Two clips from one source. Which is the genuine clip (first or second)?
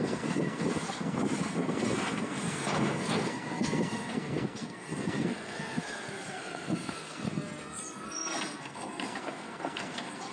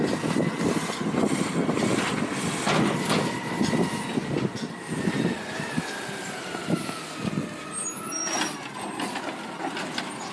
second